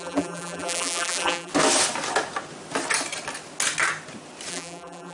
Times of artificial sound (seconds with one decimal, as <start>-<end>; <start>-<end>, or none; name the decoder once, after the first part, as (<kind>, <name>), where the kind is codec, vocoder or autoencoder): 0.0-1.5 (vocoder, BigVGAN v2); 4.5-5.1